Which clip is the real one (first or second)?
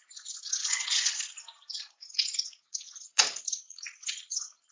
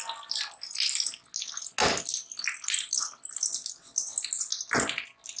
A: second